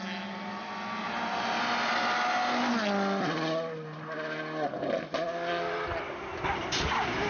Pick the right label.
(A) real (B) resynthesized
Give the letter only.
A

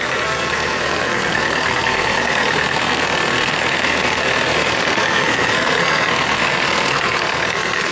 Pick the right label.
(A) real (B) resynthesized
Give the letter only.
B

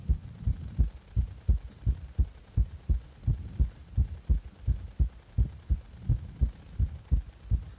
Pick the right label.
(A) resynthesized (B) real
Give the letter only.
B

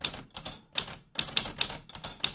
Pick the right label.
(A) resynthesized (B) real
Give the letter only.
B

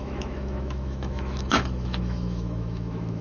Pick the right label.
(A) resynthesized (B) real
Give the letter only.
A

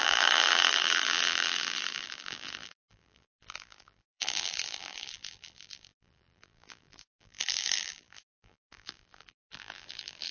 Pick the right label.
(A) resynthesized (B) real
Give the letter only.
A